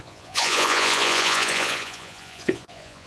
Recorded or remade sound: remade